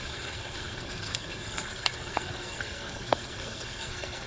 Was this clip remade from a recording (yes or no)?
yes